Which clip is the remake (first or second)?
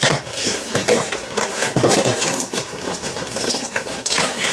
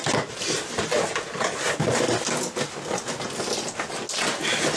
first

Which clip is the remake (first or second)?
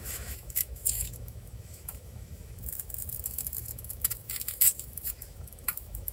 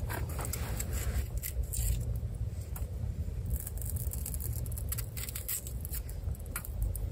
first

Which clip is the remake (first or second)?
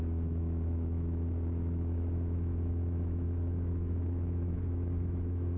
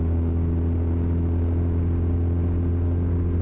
first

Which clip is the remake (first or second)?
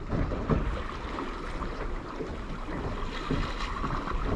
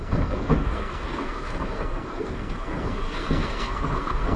second